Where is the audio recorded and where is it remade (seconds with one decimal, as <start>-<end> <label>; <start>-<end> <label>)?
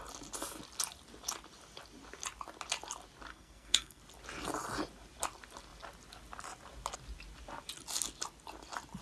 0.0-3.3 recorded; 3.3-4.0 remade; 4.0-9.0 recorded